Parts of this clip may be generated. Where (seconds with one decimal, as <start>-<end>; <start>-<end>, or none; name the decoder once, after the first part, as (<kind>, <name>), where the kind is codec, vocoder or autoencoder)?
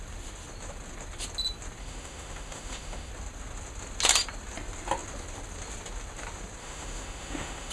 1.8-3.1 (autoencoder, DAC-VAE); 6.6-7.7